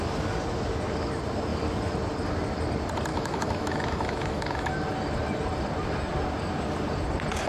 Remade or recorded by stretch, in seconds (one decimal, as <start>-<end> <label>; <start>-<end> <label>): 0.0-3.1 recorded; 3.1-4.7 remade; 4.7-7.5 recorded

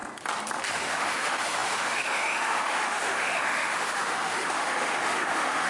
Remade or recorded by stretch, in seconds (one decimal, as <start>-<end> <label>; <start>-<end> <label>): 0.0-0.7 recorded; 0.7-5.7 remade